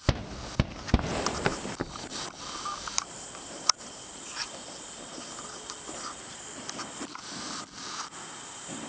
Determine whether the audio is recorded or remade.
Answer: remade